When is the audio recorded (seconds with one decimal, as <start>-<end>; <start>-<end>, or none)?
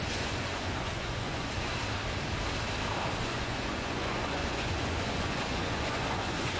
1.7-3.2